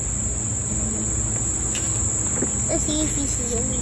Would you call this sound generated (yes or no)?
no